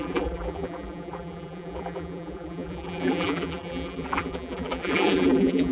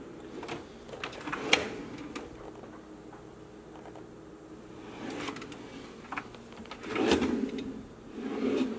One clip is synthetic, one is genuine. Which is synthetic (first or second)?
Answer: first